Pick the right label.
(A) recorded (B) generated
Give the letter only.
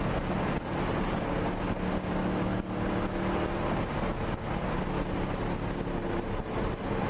A